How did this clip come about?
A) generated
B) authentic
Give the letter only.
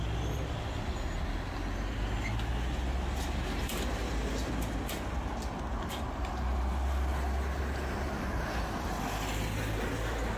B